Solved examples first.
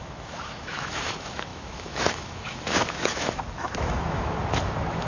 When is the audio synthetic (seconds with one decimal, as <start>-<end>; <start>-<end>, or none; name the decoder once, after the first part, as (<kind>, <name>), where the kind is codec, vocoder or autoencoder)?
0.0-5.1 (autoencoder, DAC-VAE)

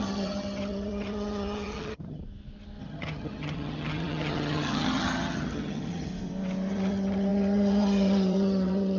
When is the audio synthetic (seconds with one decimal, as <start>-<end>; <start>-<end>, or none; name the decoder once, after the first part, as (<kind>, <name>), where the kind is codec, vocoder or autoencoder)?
0.0-2.2 (vocoder, HiFi-GAN); 2.8-6.1; 6.7-9.0

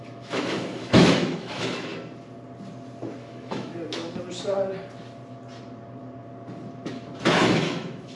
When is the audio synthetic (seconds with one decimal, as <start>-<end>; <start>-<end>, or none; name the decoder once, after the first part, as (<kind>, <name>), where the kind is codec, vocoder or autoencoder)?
0.0-1.9 (autoencoder, DAC-VAE); 3.2-3.7; 7.3-8.2

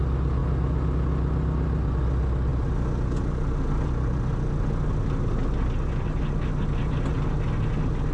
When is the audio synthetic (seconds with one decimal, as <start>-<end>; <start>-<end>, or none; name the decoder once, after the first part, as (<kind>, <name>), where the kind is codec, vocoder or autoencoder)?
none

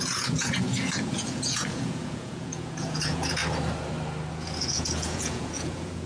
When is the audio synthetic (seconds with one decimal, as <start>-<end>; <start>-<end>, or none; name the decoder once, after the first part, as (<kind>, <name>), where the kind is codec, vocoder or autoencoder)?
0.0-3.4 (vocoder, Vocos); 4.3-6.1

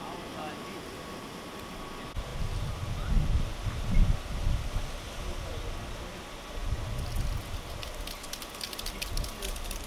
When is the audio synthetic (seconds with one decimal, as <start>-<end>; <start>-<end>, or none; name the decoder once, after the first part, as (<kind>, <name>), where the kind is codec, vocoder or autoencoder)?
none

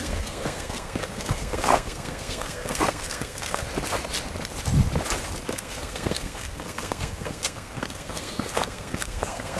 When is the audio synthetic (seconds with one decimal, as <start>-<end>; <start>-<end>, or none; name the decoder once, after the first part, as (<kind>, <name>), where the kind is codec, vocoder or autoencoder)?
0.0-3.6 (codec, SNAC); 5.5-9.6